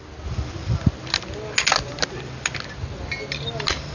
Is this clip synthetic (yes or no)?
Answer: no